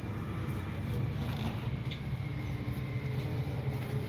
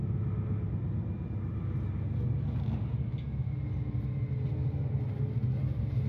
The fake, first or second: first